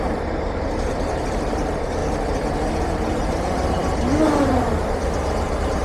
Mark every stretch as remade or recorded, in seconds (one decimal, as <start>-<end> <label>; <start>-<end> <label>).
0.0-2.0 remade; 2.0-3.1 recorded; 3.1-5.8 remade